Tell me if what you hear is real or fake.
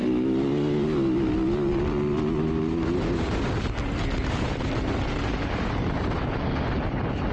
real